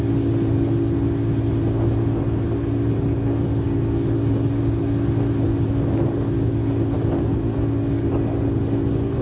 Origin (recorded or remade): recorded